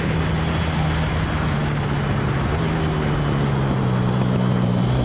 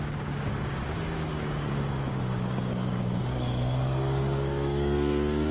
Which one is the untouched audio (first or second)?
first